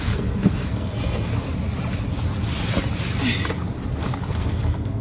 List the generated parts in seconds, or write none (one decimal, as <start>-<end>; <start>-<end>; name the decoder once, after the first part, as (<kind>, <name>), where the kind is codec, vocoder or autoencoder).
0.0-1.3 (codec, SNAC); 4.3-5.0

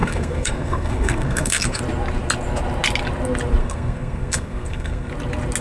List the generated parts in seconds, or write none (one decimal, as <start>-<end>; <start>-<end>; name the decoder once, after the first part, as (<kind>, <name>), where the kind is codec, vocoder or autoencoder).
0.0-1.8 (codec, SNAC); 3.6-5.1

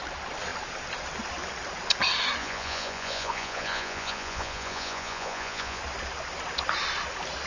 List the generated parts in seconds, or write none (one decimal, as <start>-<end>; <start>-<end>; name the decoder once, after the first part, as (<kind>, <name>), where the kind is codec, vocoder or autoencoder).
2.4-5.8 (vocoder, Vocos)

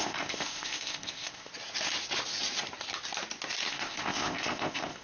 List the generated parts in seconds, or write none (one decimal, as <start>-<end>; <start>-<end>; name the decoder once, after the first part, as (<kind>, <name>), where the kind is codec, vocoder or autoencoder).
0.0-1.5 (codec, ZipCodec); 3.7-5.0

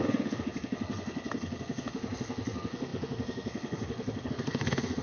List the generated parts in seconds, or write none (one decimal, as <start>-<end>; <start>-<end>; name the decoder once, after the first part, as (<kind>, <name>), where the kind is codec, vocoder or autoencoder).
0.0-5.0 (codec, SNAC)

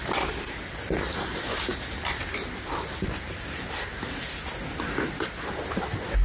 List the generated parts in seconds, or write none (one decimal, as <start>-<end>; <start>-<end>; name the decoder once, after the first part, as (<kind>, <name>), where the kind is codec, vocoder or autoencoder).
none

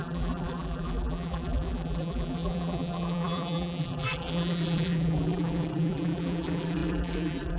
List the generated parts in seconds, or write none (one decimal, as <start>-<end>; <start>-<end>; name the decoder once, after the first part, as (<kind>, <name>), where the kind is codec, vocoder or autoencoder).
0.0-7.6 (vocoder, BigVGAN v2)

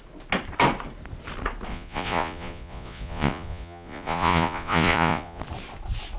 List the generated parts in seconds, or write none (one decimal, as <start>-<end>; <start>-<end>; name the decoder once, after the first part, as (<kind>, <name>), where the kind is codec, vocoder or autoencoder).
1.7-5.4 (vocoder, Vocos)